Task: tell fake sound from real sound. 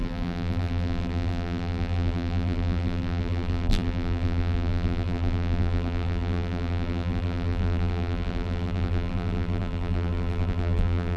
fake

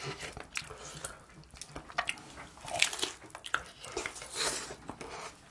real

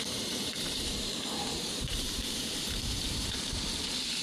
fake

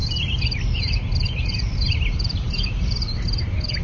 fake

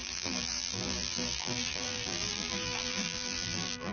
fake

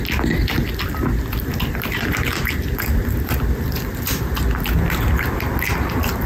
fake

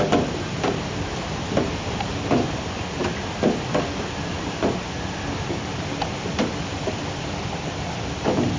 real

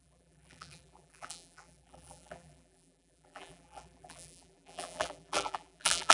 fake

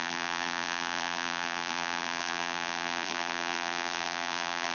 fake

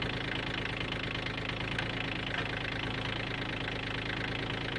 real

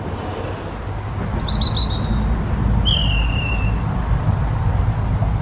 real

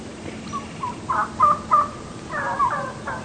real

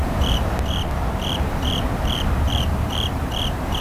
fake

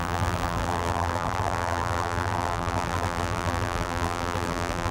fake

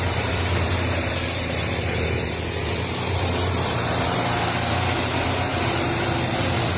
fake